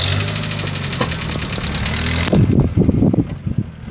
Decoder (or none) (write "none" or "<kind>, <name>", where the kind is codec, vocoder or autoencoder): none